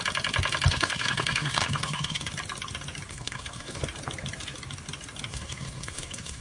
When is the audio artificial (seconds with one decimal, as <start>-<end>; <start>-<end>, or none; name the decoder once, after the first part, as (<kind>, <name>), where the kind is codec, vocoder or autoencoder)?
0.7-2.3 (codec, SNAC); 3.1-3.8; 5.3-6.4